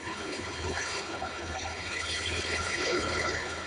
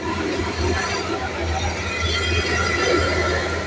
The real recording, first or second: second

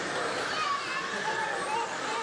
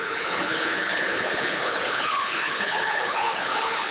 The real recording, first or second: first